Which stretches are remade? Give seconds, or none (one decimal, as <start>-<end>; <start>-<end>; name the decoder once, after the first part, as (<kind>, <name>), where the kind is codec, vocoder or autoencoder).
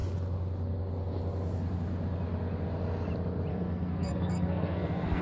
3.5-5.2 (codec, SNAC)